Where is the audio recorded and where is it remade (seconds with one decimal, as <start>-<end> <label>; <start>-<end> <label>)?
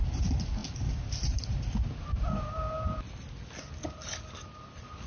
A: 0.0-5.1 recorded